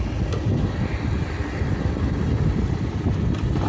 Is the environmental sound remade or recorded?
recorded